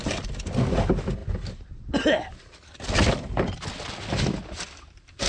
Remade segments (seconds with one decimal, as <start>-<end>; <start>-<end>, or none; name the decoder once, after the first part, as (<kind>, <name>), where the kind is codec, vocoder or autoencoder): none